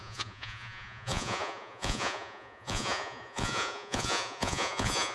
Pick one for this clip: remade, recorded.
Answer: remade